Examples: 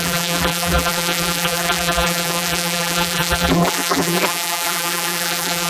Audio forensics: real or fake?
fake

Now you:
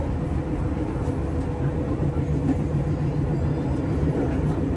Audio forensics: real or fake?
real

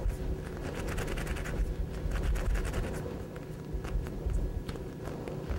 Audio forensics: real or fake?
real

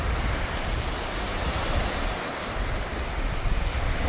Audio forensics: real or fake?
real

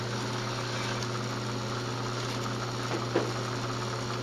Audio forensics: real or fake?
real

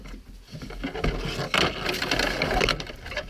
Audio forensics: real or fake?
real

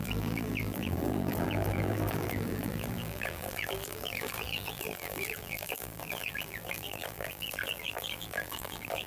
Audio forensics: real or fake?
fake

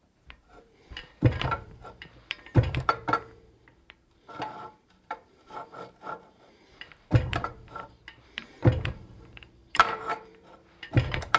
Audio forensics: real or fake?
fake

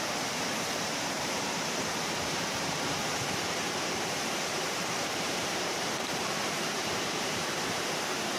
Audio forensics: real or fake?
fake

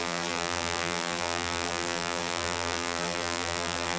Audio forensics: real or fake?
fake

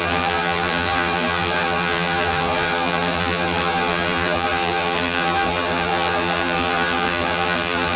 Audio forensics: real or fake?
fake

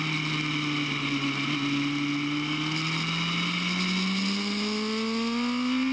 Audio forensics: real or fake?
real